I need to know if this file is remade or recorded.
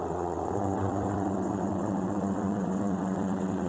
remade